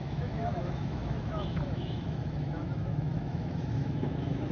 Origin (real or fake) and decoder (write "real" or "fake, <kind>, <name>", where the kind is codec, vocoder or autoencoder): fake, autoencoder, DAC-VAE